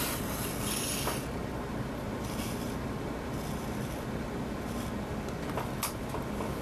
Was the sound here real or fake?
real